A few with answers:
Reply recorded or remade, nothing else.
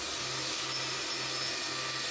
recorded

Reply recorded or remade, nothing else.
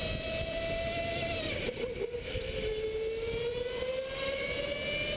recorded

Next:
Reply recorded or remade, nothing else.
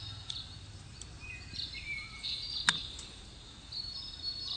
recorded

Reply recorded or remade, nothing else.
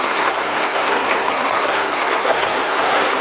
remade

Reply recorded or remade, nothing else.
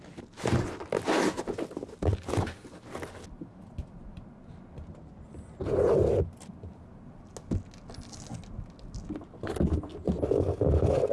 recorded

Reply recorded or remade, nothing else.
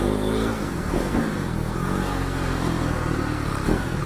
remade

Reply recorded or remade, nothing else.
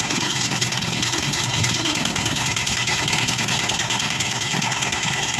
remade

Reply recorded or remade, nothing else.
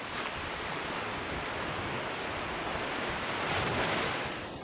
recorded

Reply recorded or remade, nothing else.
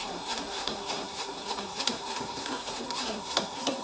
remade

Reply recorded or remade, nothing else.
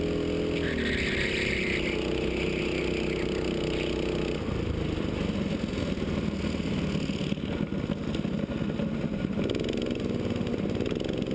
recorded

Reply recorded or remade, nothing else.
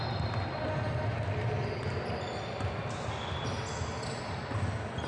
recorded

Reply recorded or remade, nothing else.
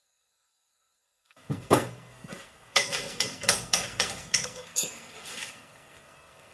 remade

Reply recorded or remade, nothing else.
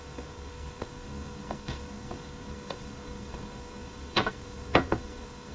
remade